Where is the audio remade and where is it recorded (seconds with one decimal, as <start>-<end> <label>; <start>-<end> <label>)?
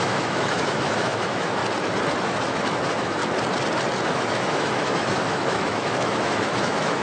0.0-1.6 remade; 1.6-2.2 recorded; 2.2-3.2 remade; 3.2-4.1 recorded; 4.1-7.0 remade